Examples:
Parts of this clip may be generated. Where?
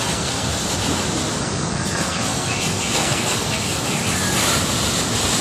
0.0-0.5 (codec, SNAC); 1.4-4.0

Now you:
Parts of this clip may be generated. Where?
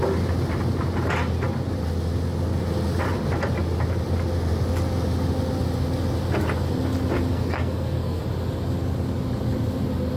7.3-8.2 (codec, SNAC)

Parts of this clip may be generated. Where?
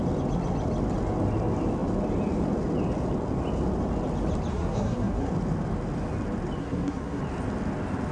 4.5-5.3 (codec, SNAC); 6.6-7.2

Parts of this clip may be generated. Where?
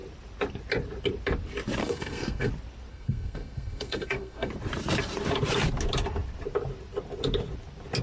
1.8-2.5 (codec, SNAC); 2.9-4.5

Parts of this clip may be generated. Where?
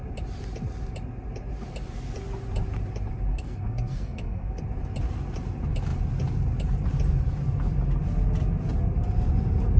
3.3-4.6 (codec, SNAC)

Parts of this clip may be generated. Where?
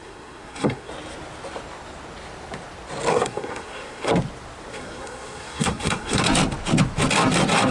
0.0-0.9 (codec, SNAC); 3.1-4.1; 4.7-6.2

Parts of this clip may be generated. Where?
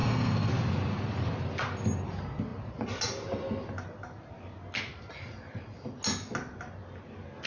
0.0-0.5 (codec, SNAC)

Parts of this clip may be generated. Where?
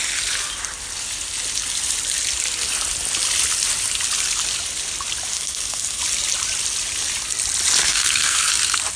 5.3-6.0 (codec, SNAC); 7.8-8.5